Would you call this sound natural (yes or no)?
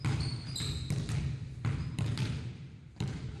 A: yes